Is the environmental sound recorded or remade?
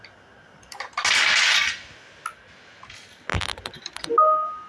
recorded